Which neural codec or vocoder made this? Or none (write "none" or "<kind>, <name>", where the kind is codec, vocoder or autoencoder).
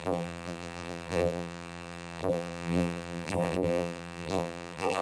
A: vocoder, BigVGAN v2